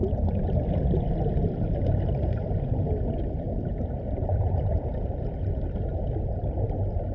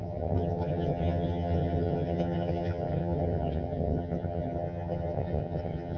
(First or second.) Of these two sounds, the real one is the first